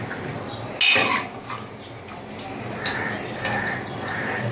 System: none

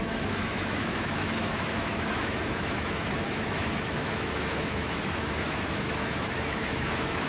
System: autoencoder, DAC-VAE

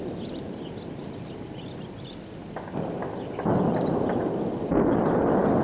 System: none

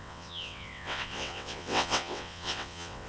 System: vocoder, WaveNeXt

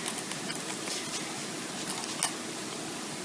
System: none